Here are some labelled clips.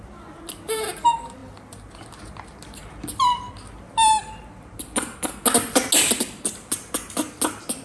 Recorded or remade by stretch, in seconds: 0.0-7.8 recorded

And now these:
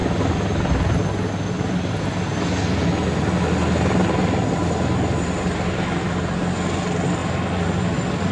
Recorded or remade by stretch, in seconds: 0.0-8.3 recorded

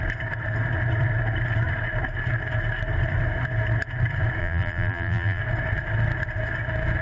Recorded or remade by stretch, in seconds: 0.0-4.4 recorded; 4.4-5.4 remade; 5.4-7.0 recorded